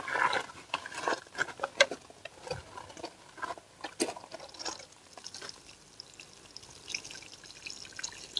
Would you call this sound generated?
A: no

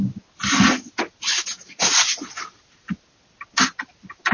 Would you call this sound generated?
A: no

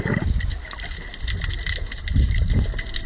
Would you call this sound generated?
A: no